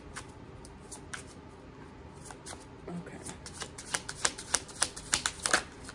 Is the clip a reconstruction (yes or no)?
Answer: no